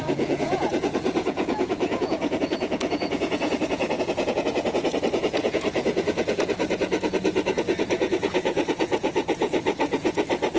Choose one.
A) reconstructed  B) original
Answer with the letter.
A